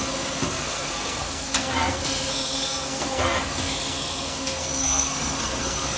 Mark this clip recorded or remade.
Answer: remade